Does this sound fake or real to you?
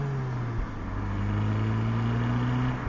real